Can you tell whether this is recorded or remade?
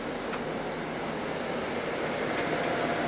recorded